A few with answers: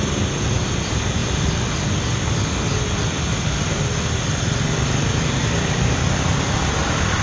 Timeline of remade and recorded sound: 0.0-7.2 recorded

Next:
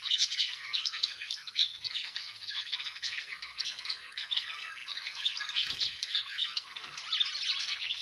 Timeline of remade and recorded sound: 0.0-7.0 remade; 7.0-7.6 recorded; 7.6-8.0 remade

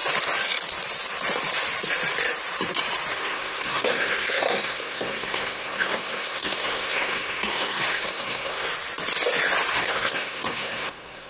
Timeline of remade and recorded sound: 0.0-3.1 recorded; 3.1-8.7 remade; 8.7-9.7 recorded; 9.7-11.3 remade